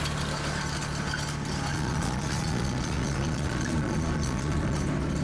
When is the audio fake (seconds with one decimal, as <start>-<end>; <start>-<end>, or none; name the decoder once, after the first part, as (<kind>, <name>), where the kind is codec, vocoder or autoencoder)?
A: 1.7-4.8 (vocoder, Vocos)